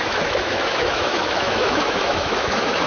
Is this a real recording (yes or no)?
no